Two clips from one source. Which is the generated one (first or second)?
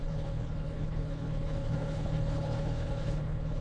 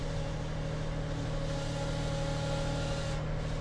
first